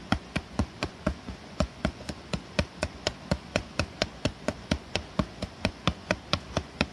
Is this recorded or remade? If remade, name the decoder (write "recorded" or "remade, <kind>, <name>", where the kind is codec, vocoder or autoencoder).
remade, vocoder, Vocos